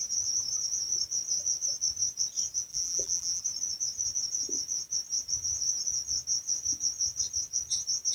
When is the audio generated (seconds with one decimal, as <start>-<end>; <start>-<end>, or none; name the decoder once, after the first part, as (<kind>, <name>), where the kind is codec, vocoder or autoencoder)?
2.7-3.4 (vocoder, BigVGAN v2)